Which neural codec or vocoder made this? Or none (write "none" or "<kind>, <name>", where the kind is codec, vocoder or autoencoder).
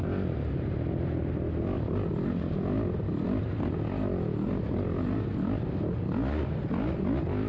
none